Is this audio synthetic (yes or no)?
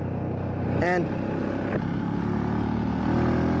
no